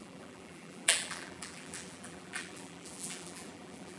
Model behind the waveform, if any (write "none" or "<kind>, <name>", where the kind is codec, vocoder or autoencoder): vocoder, BigVGAN v2